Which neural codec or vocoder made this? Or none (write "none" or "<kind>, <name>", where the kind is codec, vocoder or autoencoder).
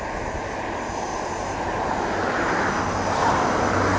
none